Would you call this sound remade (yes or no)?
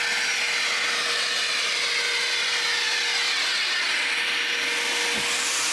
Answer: no